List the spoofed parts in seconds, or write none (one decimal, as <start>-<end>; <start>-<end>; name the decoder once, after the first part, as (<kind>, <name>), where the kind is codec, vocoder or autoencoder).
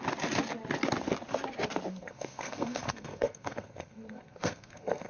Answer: 1.9-5.1 (codec, SNAC)